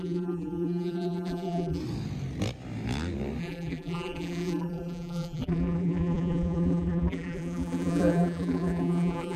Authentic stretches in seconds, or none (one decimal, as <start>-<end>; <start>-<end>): 1.8-3.4